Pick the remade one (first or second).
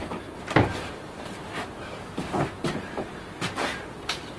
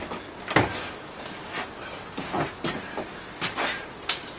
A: first